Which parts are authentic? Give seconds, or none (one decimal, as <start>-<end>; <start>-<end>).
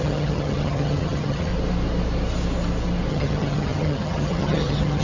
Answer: 1.5-3.1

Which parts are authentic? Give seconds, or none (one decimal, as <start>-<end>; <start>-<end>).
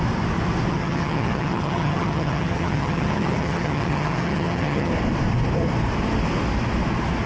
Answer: 0.0-0.7; 4.9-7.3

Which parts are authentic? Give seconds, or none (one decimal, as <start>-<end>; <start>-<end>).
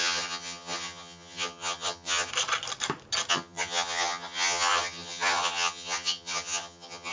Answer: 2.3-3.3